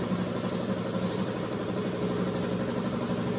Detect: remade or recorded recorded